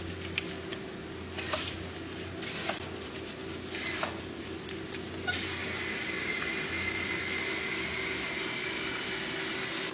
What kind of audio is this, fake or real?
real